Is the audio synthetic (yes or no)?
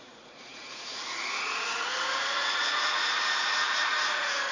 yes